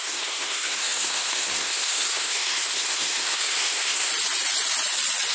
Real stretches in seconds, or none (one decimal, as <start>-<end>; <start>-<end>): 4.1-5.3